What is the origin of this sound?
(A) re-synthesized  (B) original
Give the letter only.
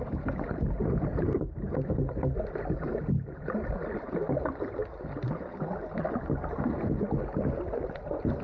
B